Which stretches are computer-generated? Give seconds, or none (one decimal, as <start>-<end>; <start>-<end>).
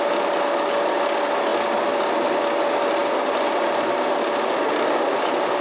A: none